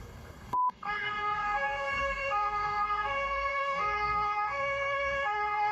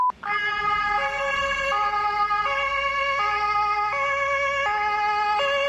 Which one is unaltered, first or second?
second